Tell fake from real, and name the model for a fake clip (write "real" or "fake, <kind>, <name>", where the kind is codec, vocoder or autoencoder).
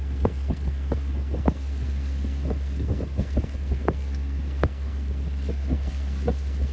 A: fake, codec, SNAC